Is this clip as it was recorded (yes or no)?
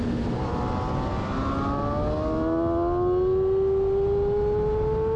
yes